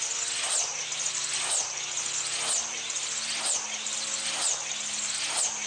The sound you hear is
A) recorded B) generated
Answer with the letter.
A